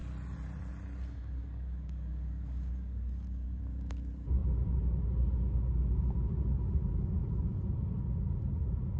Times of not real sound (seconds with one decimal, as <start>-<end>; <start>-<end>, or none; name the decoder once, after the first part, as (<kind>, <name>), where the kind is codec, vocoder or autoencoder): 1.2-3.6 (codec, DAC)